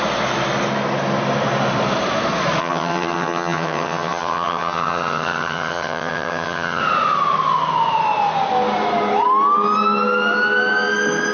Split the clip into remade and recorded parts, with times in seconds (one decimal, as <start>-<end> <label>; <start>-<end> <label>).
0.0-2.6 recorded; 2.6-6.8 remade; 6.8-11.3 recorded